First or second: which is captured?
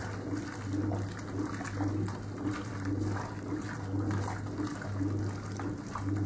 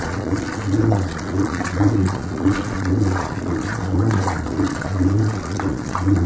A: first